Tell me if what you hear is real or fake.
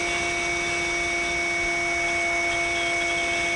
real